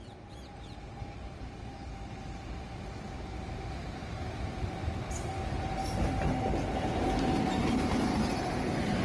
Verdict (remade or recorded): recorded